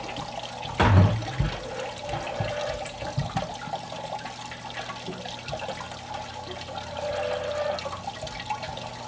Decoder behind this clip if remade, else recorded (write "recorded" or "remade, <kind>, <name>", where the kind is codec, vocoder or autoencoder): recorded